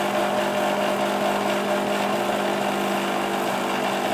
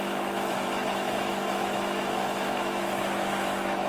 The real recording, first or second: first